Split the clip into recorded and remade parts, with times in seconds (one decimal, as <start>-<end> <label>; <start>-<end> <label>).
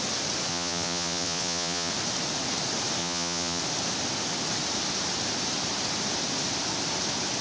0.0-0.5 recorded; 0.5-1.9 remade; 1.9-3.0 recorded; 3.0-3.6 remade; 3.6-7.4 recorded